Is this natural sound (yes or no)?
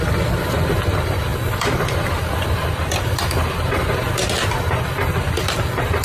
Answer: yes